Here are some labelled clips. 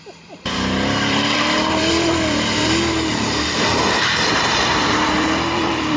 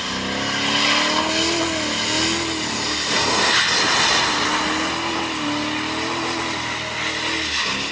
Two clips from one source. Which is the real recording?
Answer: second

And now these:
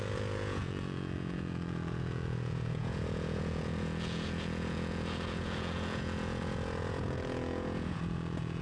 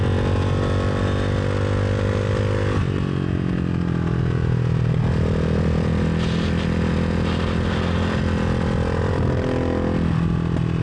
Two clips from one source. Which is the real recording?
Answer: second